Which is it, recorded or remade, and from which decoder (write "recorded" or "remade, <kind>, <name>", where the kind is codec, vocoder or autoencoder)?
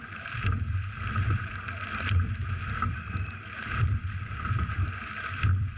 remade, vocoder, BigVGAN v2